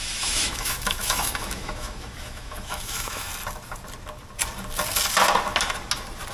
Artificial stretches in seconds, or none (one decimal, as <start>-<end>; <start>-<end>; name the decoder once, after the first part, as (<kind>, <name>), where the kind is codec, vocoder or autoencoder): 0.0-3.3 (autoencoder, DAC-VAE)